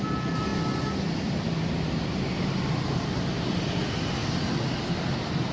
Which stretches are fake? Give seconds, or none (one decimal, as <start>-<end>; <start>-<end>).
0.0-4.2; 4.9-5.5